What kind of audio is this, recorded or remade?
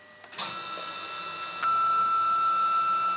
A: recorded